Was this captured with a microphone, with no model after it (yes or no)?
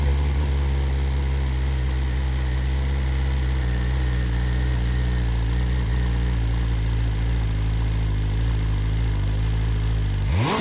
yes